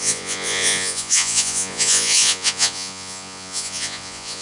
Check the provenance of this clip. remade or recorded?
remade